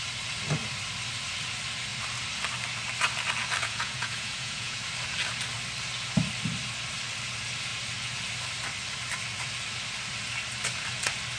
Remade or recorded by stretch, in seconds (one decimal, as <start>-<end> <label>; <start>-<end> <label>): 0.0-3.6 recorded; 3.6-4.8 remade; 4.8-11.4 recorded